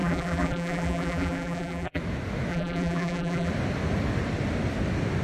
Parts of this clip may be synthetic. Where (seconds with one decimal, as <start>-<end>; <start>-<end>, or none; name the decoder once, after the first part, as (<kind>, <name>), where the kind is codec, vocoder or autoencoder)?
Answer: 0.0-2.0 (vocoder, BigVGAN v2); 2.5-3.5